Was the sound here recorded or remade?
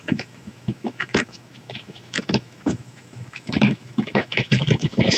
remade